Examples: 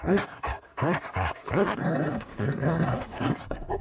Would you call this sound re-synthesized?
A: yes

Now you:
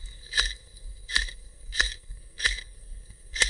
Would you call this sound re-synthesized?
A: yes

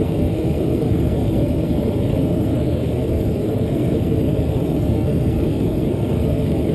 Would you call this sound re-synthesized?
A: yes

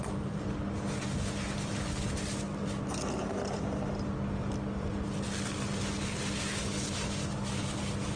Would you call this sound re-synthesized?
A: no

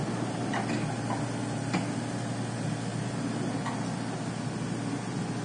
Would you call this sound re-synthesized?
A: no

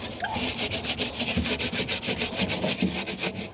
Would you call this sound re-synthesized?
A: no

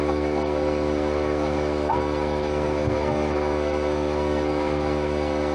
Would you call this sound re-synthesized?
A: yes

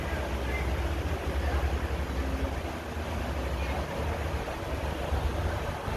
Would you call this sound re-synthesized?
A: no